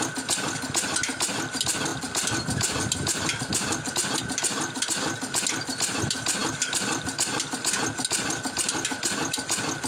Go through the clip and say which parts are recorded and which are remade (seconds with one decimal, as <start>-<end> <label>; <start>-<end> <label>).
0.0-1.9 recorded; 1.9-3.9 remade; 3.9-6.4 recorded; 6.4-7.1 remade; 7.1-9.9 recorded

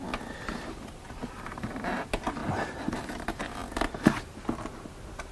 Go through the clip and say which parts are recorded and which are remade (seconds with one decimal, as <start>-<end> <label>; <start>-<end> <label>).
0.0-1.2 recorded; 1.2-2.0 remade; 2.0-2.4 recorded; 2.4-3.3 remade; 3.3-5.3 recorded

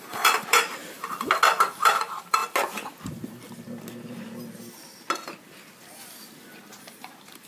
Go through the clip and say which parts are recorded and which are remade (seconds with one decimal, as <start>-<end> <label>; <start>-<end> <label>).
0.0-0.8 remade; 0.8-1.7 recorded; 1.7-2.4 remade; 2.4-6.7 recorded; 6.7-7.5 remade

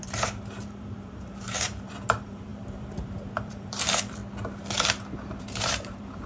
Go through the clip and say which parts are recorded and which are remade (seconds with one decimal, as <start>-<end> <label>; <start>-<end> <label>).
0.0-4.2 remade; 4.2-5.4 recorded; 5.4-6.3 remade